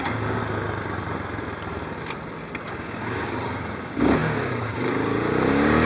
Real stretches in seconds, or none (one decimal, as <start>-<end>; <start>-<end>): 0.4-2.7